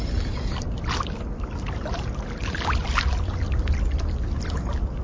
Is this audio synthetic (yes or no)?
no